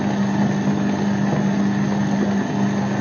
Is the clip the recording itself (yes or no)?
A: yes